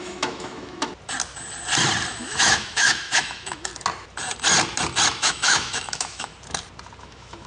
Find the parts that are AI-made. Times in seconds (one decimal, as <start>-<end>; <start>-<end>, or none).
0.0-0.9; 2.1-3.7; 5.2-6.3; 7.0-7.5

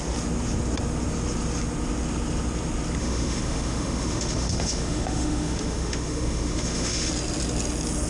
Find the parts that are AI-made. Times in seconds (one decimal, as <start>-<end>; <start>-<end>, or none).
3.0-7.1

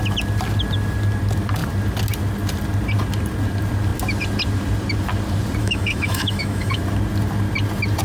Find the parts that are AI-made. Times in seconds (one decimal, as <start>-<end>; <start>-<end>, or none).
5.6-6.8

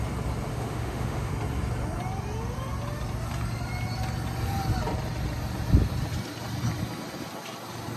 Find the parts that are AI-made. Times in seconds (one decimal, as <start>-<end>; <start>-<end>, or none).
0.5-1.3